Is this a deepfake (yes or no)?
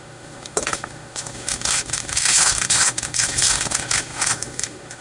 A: yes